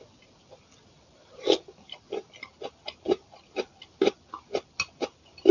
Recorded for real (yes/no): yes